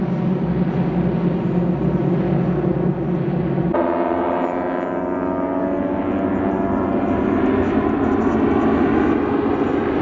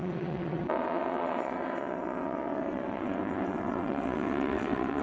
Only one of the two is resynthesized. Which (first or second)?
second